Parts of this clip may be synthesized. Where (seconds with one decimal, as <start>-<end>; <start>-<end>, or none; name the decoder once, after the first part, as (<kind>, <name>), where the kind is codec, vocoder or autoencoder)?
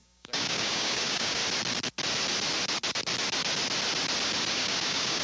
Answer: 0.0-1.4 (codec, DAC); 4.5-5.2